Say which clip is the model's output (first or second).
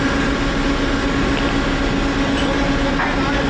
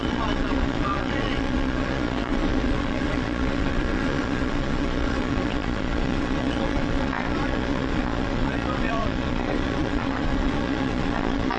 second